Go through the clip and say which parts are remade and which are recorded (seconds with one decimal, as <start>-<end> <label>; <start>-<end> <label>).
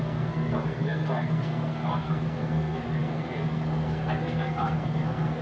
0.0-5.4 remade